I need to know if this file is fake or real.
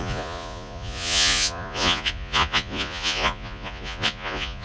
fake